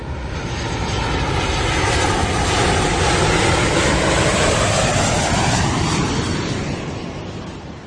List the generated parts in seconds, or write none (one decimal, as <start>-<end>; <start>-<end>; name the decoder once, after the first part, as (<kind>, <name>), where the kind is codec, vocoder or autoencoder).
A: 3.7-7.9 (vocoder, BigVGAN v2)